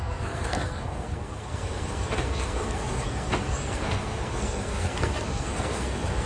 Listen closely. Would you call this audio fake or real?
fake